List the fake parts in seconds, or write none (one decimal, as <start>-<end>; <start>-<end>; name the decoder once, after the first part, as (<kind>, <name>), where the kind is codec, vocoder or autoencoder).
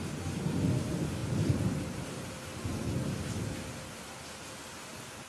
none